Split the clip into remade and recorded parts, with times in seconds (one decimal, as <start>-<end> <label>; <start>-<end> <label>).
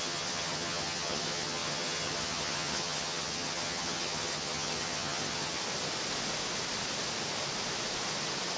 0.0-5.6 remade; 5.6-8.6 recorded